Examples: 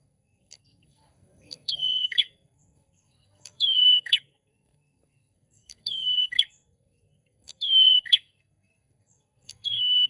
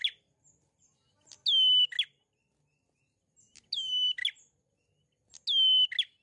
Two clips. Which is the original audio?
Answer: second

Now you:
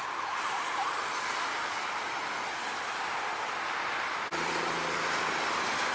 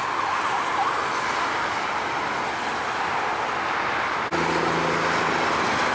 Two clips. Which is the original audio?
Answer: second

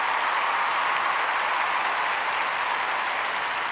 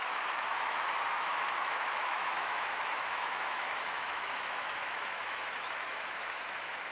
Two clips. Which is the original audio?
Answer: first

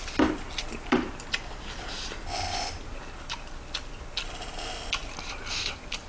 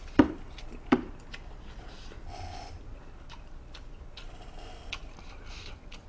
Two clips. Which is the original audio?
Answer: first